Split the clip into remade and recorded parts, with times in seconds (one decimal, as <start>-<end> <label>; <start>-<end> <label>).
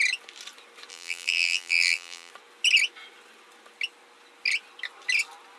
0.0-0.9 recorded; 0.9-2.3 remade; 2.3-5.6 recorded